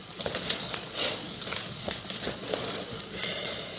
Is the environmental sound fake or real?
fake